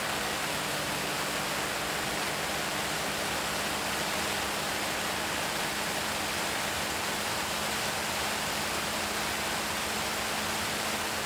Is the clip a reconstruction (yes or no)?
no